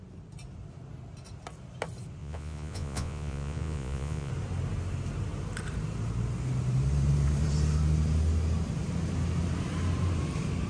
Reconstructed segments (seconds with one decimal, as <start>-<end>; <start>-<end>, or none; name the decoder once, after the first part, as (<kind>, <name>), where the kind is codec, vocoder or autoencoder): 2.2-4.3 (vocoder, Vocos)